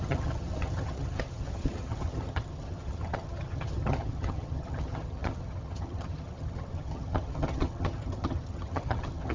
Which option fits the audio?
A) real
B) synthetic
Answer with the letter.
B